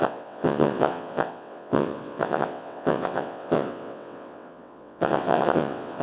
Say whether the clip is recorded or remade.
remade